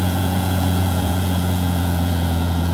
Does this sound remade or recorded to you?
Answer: remade